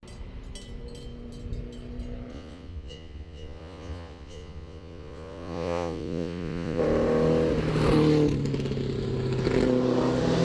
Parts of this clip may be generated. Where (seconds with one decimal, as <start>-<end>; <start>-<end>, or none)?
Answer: 2.3-6.8